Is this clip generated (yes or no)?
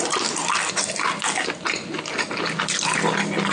no